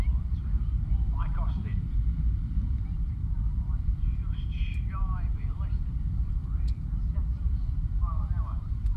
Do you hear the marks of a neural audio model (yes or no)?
yes